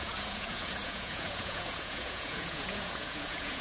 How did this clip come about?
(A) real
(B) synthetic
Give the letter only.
B